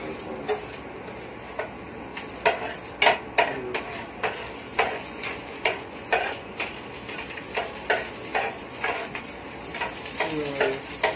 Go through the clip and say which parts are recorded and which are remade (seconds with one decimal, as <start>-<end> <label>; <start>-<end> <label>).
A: 0.0-4.7 recorded; 4.7-6.6 remade; 6.6-8.3 recorded; 8.3-9.2 remade; 9.2-11.2 recorded